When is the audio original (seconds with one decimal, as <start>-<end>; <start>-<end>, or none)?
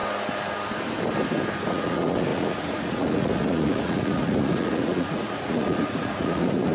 0.0-1.7